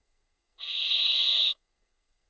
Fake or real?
fake